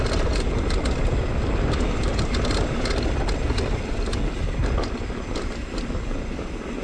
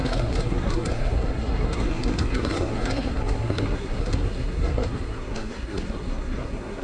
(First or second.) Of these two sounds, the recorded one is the first